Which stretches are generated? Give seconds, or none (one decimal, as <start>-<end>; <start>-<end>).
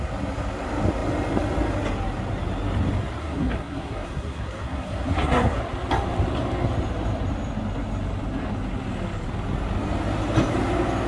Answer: 3.2-5.6